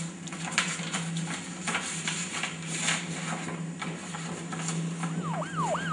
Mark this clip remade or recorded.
recorded